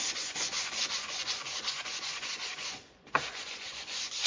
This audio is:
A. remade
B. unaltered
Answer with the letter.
A